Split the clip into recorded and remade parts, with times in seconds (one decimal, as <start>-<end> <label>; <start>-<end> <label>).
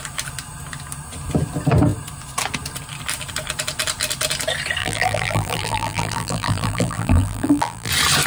0.0-4.8 recorded; 4.8-7.9 remade; 7.9-8.3 recorded